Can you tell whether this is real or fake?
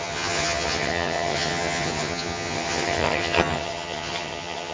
fake